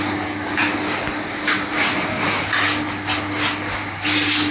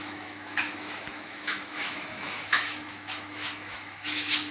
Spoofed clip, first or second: second